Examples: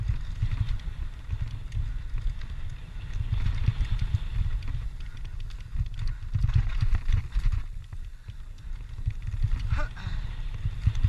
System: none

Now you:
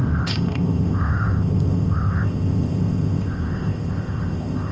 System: codec, ZipCodec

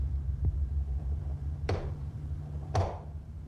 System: vocoder, BigVGAN v2